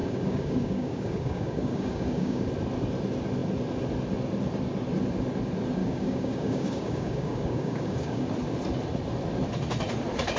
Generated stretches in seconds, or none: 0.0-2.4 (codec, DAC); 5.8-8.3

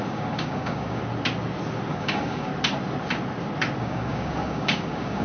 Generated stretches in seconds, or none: 0.0-1.0 (codec, DAC); 1.9-2.5; 3.8-5.2